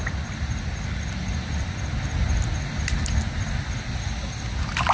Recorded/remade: recorded